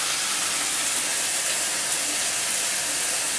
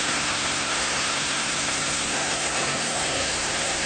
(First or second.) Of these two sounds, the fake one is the second